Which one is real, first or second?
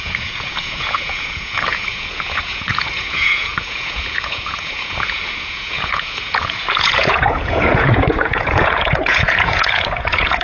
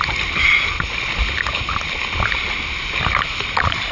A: second